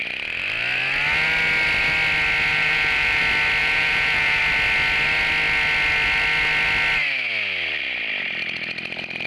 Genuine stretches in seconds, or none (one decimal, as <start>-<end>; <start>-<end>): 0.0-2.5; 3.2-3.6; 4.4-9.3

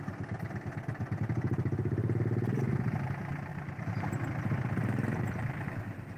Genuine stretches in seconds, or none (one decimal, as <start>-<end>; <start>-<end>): 0.0-3.5; 4.1-4.8

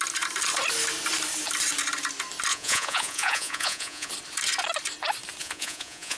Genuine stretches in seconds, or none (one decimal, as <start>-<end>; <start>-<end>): 0.0-2.5; 4.1-5.4

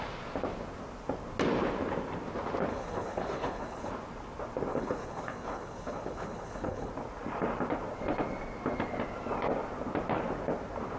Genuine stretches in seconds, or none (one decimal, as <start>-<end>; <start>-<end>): 0.0-2.7; 3.9-4.7; 6.9-11.0